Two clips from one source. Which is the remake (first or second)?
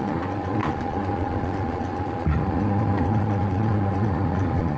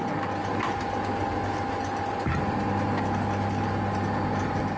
first